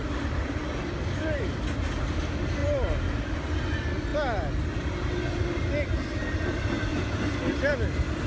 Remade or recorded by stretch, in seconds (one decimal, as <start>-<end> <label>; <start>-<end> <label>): 0.0-6.9 recorded; 6.9-7.7 remade; 7.7-8.3 recorded